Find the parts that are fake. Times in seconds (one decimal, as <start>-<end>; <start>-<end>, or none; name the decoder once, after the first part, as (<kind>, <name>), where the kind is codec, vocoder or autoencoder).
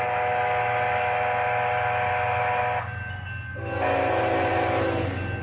none